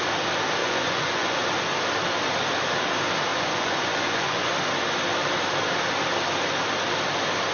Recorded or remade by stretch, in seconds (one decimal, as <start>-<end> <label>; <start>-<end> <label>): 0.0-0.6 recorded; 0.6-1.5 remade; 1.5-3.3 recorded; 3.3-4.5 remade; 4.5-7.5 recorded